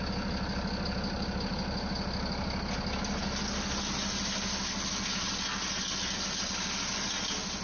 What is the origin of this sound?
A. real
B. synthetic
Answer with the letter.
A